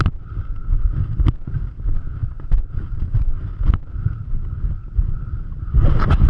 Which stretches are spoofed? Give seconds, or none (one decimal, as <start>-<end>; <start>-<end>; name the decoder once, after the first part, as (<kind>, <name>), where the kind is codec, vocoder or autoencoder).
2.2-3.3 (vocoder, Vocos)